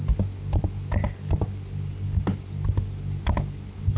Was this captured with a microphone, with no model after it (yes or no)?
yes